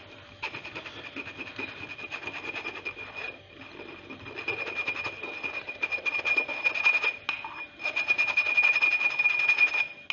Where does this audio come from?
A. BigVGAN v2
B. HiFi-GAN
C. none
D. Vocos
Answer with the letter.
C